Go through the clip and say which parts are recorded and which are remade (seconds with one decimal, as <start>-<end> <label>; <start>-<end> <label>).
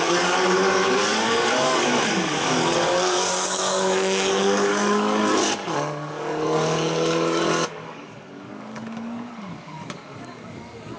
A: 0.0-11.0 remade